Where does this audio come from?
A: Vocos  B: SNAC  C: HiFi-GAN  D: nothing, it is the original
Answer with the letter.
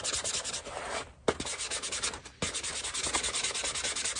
D